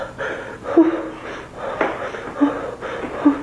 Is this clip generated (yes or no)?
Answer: no